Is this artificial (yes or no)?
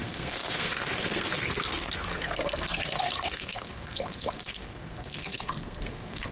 yes